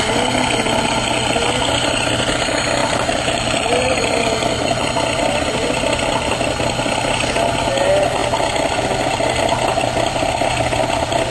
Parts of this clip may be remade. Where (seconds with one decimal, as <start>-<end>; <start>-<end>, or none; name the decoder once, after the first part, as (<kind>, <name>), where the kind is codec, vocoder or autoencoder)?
2.8-4.2 (vocoder, BigVGAN v2)